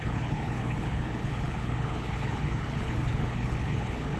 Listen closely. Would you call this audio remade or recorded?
remade